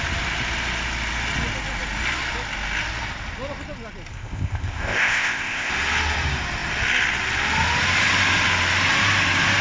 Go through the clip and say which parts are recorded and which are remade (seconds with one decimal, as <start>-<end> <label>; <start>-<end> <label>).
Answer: 0.0-4.1 recorded; 4.1-5.7 remade; 5.7-9.6 recorded